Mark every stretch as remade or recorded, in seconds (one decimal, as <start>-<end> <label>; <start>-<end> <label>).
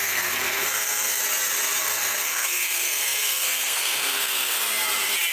0.0-1.2 remade; 1.2-1.8 recorded; 1.8-4.6 remade; 4.6-5.3 recorded